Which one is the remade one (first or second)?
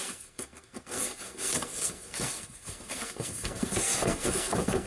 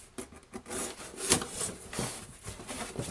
first